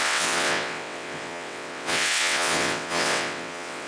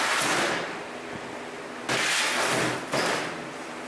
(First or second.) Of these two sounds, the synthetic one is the first